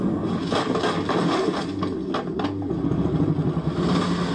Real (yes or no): yes